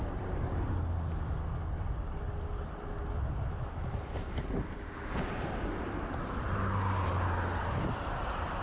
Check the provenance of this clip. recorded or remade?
recorded